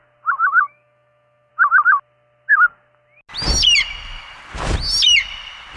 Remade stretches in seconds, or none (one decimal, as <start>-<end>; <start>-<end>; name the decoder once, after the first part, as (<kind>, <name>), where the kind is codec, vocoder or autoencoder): 0.4-1.5 (autoencoder, DAC-VAE)